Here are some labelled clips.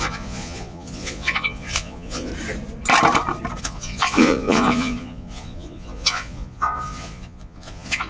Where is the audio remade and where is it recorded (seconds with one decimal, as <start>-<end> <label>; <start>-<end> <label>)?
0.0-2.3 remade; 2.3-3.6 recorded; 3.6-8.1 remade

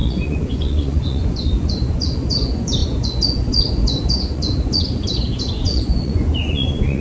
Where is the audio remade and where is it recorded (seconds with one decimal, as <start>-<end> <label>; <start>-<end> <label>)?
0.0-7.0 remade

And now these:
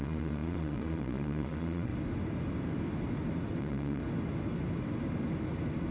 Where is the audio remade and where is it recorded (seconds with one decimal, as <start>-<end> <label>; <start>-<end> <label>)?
0.0-1.9 remade; 1.9-3.6 recorded; 3.6-4.0 remade; 4.0-5.9 recorded

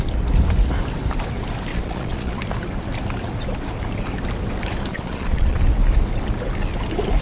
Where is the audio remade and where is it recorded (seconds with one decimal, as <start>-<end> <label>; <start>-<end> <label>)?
0.0-1.7 recorded; 1.7-2.4 remade; 2.4-4.9 recorded; 4.9-5.6 remade; 5.6-7.2 recorded

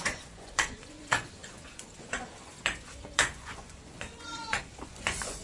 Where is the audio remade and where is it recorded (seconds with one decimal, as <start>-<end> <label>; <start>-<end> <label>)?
0.0-5.4 remade

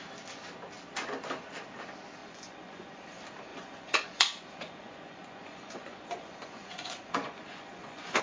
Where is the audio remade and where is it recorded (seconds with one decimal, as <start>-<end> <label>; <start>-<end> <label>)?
0.0-2.2 recorded; 2.2-3.0 remade; 3.0-3.5 recorded; 3.5-8.2 remade